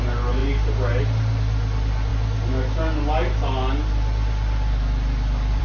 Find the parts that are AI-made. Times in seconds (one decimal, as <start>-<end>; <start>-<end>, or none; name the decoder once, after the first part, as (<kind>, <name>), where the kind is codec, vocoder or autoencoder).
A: none